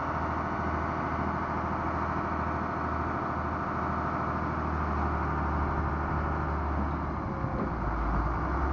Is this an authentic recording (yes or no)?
yes